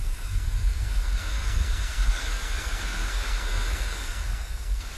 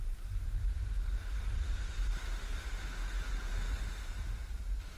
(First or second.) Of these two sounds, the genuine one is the second